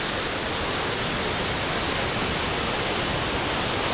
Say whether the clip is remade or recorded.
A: recorded